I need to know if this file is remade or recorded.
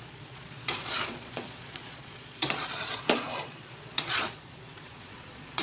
remade